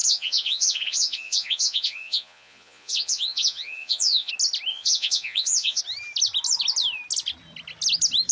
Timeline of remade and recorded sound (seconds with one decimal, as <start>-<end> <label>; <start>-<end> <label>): 0.0-4.3 remade; 4.3-4.7 recorded; 4.7-5.8 remade; 5.8-8.3 recorded